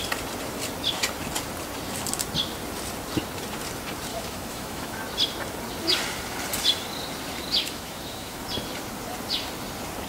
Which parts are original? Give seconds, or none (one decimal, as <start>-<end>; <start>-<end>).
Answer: 0.0-4.1; 5.0-7.6; 8.4-10.1